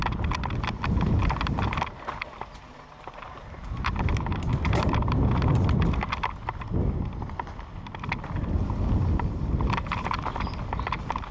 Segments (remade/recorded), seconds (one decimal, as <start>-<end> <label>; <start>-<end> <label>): 0.0-11.3 recorded